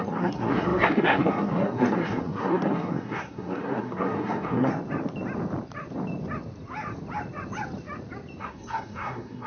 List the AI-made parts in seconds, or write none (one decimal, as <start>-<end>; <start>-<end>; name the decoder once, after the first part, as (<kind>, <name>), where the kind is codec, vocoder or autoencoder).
0.0-4.7 (codec, SNAC); 8.4-9.5

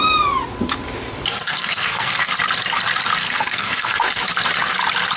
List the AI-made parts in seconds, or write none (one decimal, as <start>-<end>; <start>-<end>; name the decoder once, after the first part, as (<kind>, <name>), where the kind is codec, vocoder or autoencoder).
1.5-2.3 (codec, SNAC); 3.2-4.2

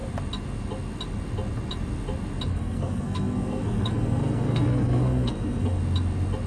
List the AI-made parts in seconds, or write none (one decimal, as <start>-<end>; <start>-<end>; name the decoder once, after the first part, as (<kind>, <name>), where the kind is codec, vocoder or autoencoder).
2.5-5.8 (codec, SNAC)

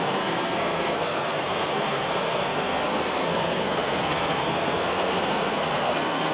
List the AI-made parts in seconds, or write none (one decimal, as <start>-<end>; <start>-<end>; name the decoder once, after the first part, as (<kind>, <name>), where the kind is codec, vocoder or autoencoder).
0.0-6.3 (codec, SNAC)